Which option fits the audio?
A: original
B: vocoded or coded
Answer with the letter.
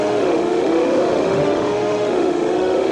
B